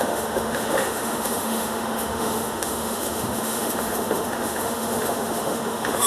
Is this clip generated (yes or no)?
yes